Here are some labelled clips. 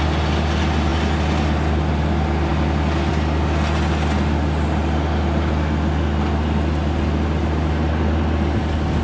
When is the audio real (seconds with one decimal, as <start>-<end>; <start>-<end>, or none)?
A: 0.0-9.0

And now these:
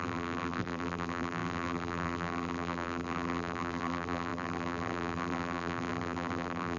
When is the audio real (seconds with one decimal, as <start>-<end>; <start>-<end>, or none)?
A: none

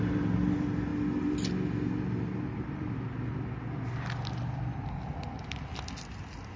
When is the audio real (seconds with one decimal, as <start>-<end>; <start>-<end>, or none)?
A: 0.0-6.6